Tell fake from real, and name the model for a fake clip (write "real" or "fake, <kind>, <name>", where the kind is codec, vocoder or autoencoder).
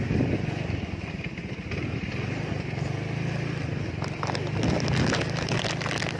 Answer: real